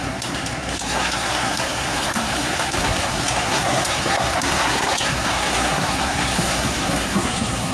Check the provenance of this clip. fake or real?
fake